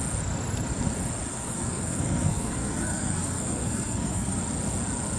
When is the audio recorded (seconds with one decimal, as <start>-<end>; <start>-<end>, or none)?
0.0-1.3; 4.4-5.2